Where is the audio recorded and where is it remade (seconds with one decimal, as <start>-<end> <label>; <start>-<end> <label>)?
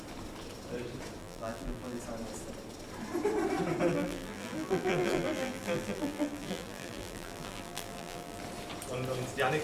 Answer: 0.0-1.2 recorded; 1.2-2.0 remade; 2.0-3.9 recorded; 3.9-8.4 remade; 8.4-9.6 recorded